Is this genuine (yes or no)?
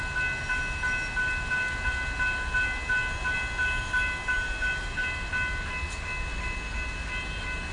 yes